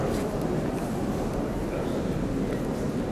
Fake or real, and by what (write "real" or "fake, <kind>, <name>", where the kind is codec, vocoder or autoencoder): real